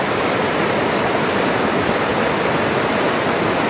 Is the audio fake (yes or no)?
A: yes